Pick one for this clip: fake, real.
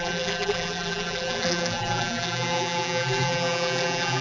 fake